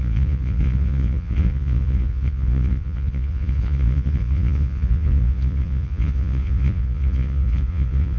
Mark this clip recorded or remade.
remade